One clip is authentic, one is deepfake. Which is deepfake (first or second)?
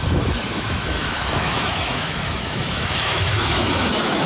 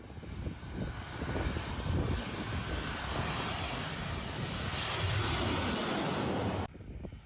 first